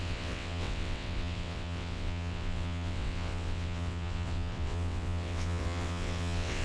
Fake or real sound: fake